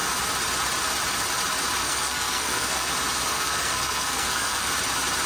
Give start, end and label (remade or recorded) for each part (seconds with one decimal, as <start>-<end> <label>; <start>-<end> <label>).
0.0-1.8 recorded; 1.8-2.9 remade; 2.9-3.3 recorded; 3.3-4.7 remade; 4.7-5.3 recorded